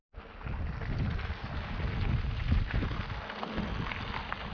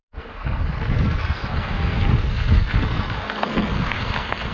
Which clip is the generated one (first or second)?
second